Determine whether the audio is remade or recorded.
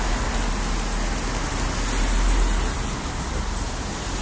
recorded